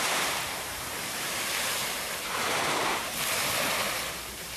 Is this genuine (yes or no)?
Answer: no